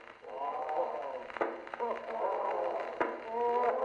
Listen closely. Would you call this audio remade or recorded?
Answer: recorded